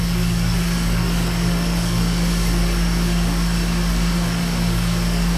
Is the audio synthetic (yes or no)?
yes